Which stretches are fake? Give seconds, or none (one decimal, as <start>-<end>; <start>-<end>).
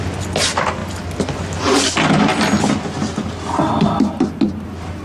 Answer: none